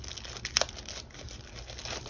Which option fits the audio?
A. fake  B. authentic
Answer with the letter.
B